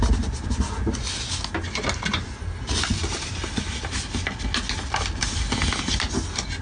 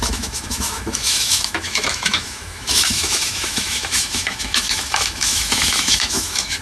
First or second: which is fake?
second